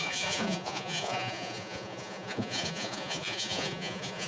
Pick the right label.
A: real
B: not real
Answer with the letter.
B